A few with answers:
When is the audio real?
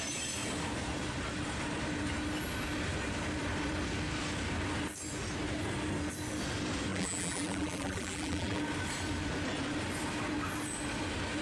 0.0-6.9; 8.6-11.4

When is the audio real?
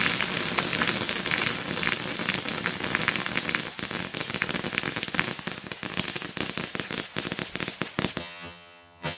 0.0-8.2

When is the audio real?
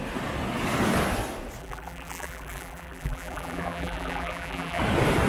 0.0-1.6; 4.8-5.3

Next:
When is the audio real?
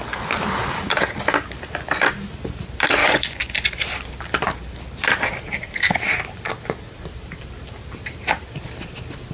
0.0-3.0; 3.5-9.3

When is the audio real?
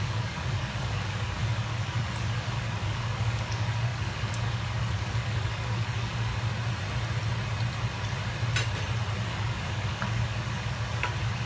6.3-9.2